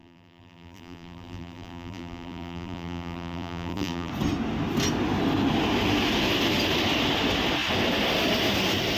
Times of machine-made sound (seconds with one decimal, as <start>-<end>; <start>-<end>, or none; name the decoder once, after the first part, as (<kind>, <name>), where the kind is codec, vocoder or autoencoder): 0.0-4.1 (vocoder, BigVGAN v2)